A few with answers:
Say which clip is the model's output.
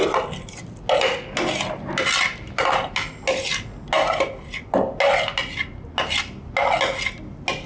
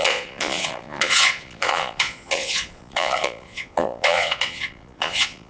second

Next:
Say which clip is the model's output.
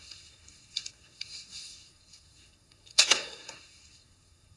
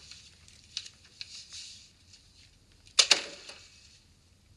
first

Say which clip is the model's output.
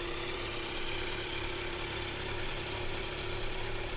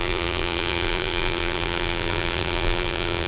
second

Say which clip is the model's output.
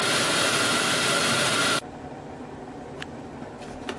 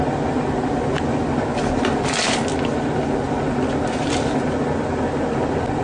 first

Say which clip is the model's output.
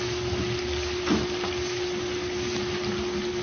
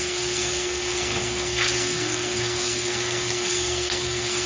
second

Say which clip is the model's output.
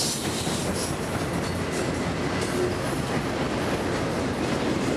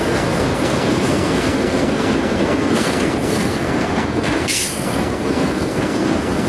second